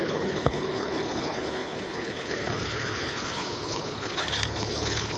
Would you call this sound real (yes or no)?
no